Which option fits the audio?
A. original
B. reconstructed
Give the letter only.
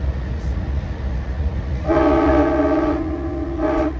B